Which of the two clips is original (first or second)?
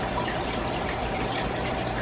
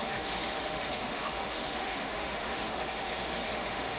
first